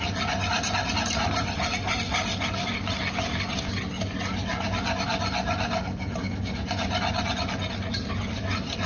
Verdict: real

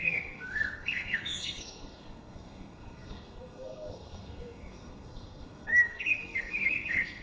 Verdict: fake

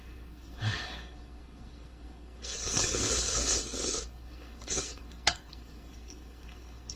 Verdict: fake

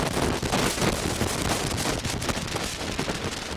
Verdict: real